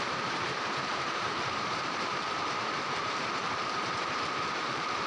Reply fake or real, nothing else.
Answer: fake